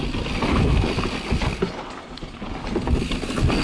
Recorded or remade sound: recorded